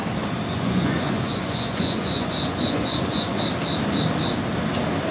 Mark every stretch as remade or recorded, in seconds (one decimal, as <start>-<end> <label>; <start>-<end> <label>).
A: 0.0-0.5 recorded; 0.5-3.4 remade; 3.4-5.1 recorded